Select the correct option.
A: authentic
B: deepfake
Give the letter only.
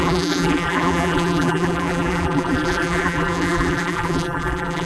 B